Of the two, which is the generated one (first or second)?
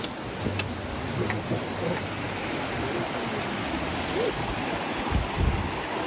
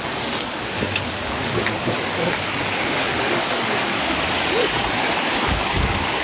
second